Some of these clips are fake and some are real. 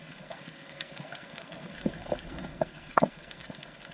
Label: fake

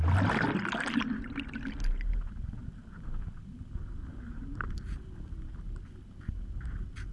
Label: real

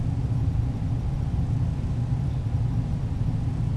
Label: real